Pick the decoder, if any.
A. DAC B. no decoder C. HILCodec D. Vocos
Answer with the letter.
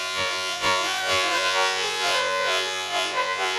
D